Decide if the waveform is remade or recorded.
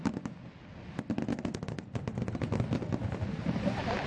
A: recorded